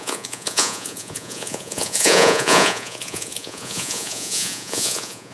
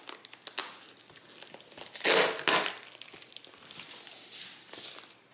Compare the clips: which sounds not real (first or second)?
first